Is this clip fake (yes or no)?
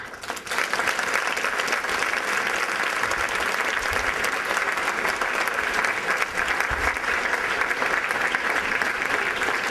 no